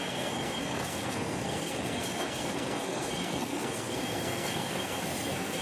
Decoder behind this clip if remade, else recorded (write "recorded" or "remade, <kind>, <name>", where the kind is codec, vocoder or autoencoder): remade, codec, SNAC